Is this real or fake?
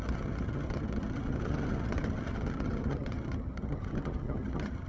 fake